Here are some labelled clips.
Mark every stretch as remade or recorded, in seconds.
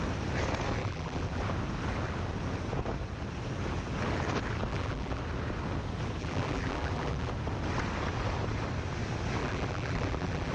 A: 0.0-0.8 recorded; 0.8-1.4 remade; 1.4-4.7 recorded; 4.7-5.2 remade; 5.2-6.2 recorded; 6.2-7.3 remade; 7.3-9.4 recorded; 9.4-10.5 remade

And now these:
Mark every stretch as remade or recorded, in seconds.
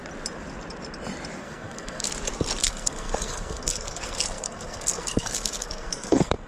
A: 0.0-1.4 recorded; 1.4-2.1 remade; 2.1-2.6 recorded; 2.6-6.5 remade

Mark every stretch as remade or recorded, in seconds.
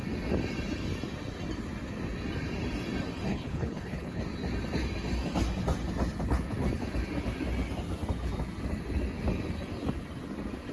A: 0.0-3.3 recorded; 3.3-4.2 remade; 4.2-10.7 recorded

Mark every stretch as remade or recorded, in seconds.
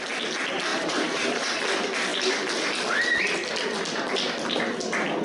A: 0.0-0.7 recorded; 0.7-1.6 remade; 1.6-5.2 recorded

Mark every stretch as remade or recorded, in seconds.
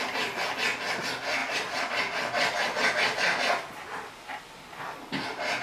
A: 0.0-5.6 recorded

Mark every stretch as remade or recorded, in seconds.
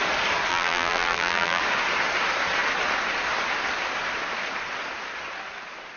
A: 0.0-0.5 recorded; 0.5-1.6 remade; 1.6-6.0 recorded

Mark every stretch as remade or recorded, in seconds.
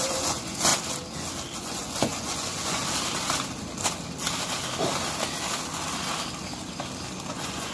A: 0.0-0.7 remade; 0.7-1.6 recorded; 1.6-2.8 remade; 2.8-7.3 recorded; 7.3-7.7 remade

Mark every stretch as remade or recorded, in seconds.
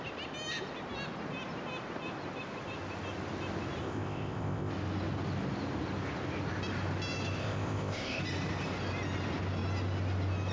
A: 0.0-3.8 recorded; 3.8-4.7 remade; 4.7-7.4 recorded; 7.4-8.2 remade; 8.2-10.5 recorded